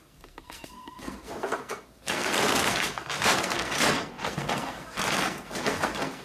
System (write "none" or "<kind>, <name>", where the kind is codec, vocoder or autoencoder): codec, SNAC